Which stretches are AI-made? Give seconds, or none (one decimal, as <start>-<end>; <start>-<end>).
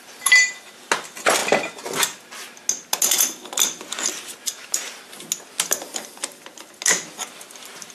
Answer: none